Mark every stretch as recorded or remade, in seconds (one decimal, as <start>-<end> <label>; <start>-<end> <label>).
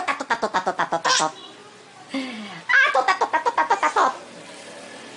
0.0-5.2 recorded